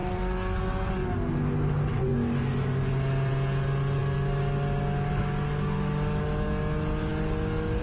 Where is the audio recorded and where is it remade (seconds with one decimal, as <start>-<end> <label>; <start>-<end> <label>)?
0.0-0.9 remade; 0.9-7.8 recorded